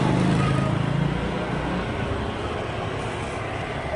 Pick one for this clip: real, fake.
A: real